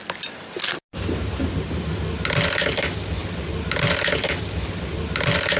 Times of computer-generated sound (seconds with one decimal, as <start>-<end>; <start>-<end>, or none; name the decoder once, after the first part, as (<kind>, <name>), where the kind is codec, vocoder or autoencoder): none